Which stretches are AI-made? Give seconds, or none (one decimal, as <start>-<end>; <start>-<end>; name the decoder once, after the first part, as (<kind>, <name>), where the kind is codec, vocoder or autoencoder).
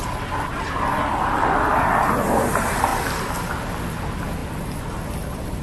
none